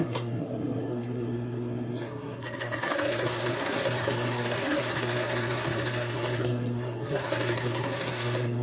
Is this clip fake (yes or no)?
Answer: yes